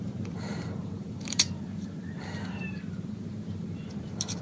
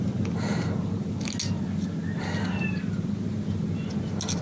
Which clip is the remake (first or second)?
first